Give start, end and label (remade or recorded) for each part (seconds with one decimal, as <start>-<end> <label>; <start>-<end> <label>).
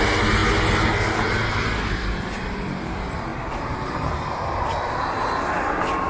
0.0-6.1 recorded